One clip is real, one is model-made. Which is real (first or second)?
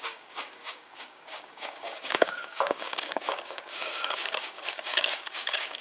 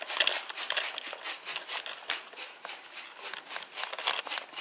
second